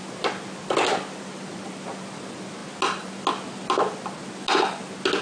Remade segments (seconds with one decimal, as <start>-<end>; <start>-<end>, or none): none